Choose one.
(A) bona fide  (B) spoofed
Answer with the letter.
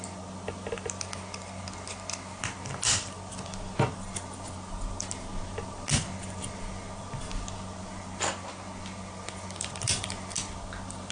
A